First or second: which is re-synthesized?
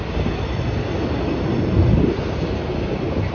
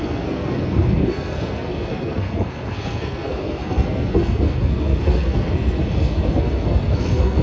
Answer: second